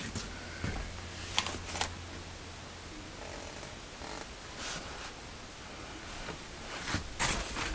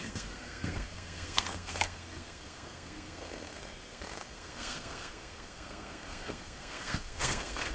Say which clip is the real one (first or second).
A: first